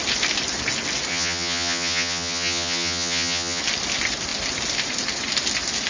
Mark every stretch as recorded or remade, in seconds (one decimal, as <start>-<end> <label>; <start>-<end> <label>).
0.0-1.1 recorded; 1.1-3.6 remade; 3.6-5.9 recorded